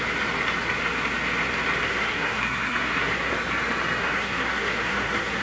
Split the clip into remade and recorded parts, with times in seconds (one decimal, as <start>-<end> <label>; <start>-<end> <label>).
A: 0.0-1.8 recorded; 1.8-3.3 remade; 3.3-4.0 recorded; 4.0-5.4 remade